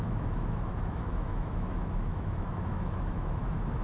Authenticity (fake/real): fake